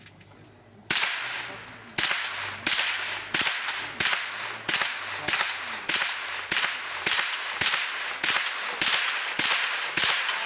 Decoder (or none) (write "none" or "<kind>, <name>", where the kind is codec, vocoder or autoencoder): none